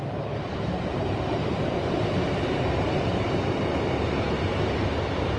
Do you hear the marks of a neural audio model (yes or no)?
yes